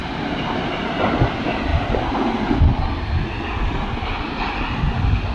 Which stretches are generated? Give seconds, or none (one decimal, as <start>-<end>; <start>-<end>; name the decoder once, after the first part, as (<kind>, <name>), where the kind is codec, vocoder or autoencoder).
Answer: 0.0-1.2 (vocoder, BigVGAN v2)